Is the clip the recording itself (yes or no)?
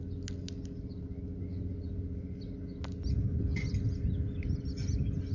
yes